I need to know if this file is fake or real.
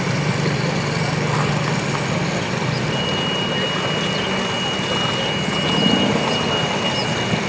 real